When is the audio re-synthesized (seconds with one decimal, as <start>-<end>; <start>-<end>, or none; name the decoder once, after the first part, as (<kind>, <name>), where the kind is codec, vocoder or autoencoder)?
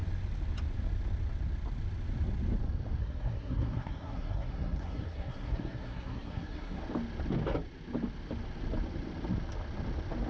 3.0-6.8 (codec, SNAC)